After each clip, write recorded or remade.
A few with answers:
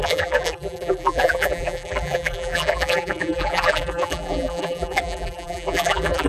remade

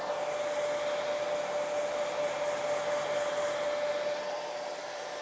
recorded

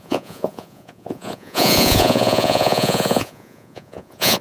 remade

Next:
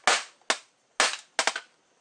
recorded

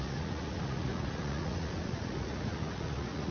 remade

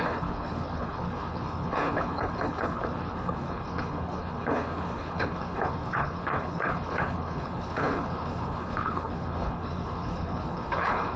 remade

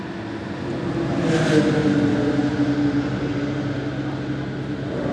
recorded